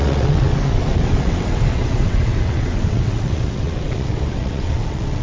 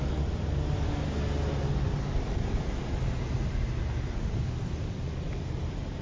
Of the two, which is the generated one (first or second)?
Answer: first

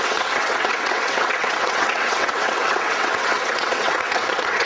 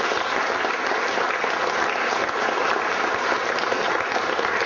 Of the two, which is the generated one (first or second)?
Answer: first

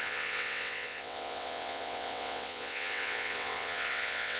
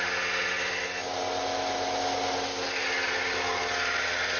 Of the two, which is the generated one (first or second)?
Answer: first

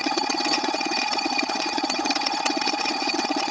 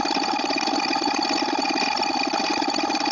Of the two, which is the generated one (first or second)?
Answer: first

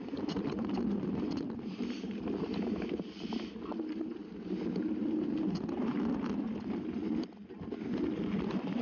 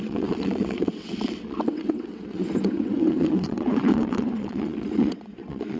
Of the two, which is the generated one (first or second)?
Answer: second